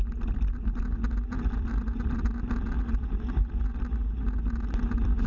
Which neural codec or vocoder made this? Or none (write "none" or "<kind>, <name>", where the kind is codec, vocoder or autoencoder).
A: none